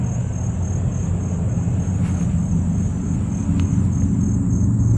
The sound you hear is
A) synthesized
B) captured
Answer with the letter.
B